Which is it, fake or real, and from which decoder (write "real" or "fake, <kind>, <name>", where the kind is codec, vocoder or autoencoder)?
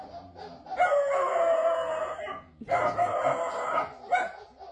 real